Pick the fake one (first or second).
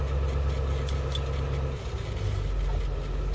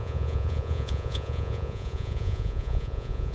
second